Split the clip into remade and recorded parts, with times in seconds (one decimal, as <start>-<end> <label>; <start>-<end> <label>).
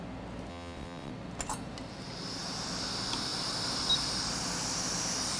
0.0-0.5 recorded; 0.5-1.1 remade; 1.1-5.4 recorded